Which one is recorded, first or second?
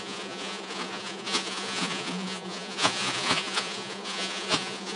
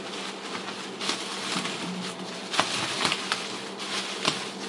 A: second